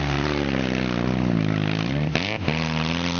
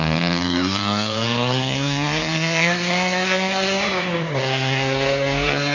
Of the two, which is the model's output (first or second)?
second